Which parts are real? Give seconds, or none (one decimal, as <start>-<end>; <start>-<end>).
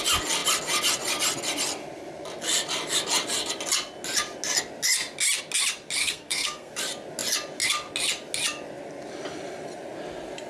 0.0-6.0; 6.7-10.5